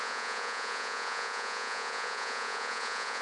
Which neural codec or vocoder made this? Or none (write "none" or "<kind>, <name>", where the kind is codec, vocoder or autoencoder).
vocoder, Vocos